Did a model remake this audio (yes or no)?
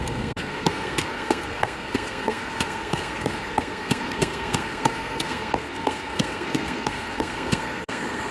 yes